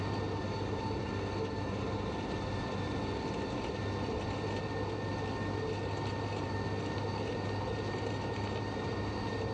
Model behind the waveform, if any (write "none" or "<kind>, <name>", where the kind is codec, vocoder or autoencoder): none